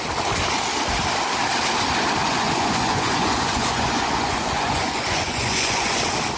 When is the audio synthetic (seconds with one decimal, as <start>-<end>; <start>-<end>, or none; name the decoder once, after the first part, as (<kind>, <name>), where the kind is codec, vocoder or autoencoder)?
2.2-6.0 (vocoder, Vocos)